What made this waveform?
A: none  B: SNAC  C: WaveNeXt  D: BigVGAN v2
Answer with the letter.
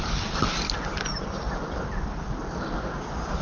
A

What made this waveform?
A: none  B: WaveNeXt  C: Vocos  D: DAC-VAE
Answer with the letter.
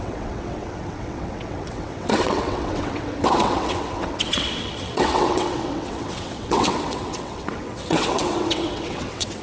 B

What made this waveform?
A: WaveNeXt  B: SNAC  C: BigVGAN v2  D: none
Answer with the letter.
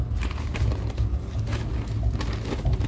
D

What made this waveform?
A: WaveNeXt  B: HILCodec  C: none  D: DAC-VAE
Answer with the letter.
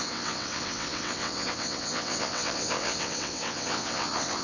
A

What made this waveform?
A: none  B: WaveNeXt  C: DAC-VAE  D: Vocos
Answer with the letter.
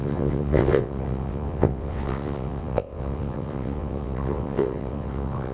B